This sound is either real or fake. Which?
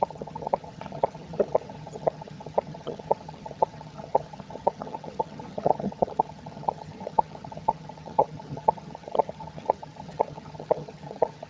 fake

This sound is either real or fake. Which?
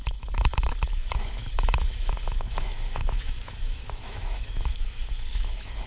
fake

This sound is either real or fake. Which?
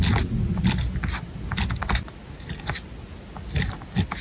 real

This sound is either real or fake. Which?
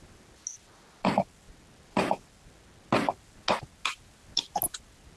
real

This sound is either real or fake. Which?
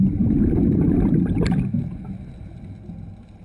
real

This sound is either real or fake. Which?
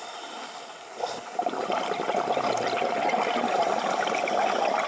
real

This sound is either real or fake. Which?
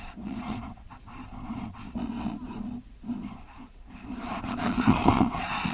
fake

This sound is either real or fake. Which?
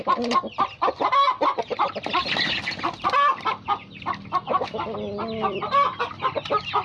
real